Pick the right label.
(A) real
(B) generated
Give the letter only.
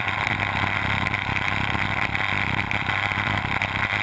B